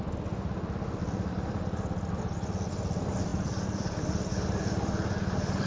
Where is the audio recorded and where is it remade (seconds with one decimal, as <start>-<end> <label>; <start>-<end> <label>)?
0.0-1.0 recorded; 1.0-2.1 remade; 2.1-3.3 recorded; 3.3-5.7 remade